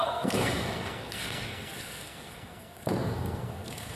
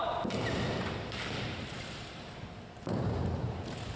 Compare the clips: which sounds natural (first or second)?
second